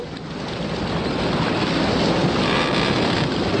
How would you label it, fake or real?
real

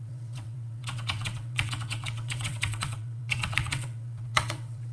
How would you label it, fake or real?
fake